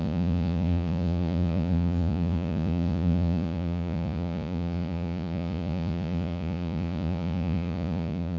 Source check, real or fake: fake